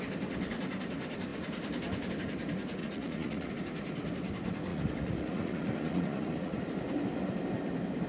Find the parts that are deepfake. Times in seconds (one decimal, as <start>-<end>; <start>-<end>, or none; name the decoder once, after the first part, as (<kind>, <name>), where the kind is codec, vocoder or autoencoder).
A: 2.8-3.5 (vocoder, Vocos); 4.7-6.6